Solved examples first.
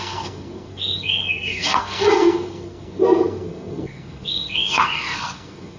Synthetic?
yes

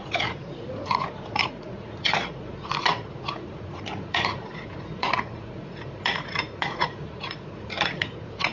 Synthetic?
yes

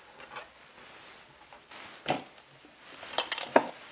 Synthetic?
no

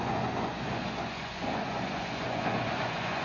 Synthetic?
yes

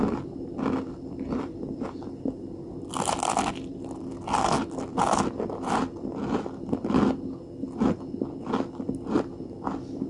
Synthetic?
no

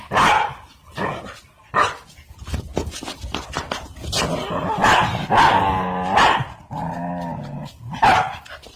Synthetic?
no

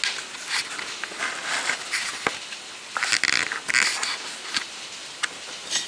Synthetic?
no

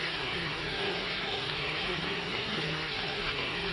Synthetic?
yes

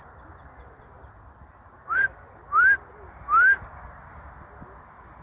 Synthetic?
no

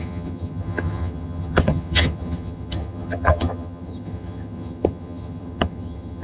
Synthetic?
yes